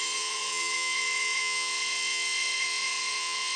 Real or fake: fake